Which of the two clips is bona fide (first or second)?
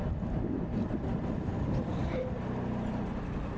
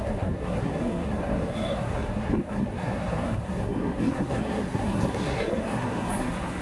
first